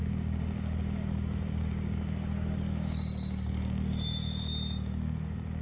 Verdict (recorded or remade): remade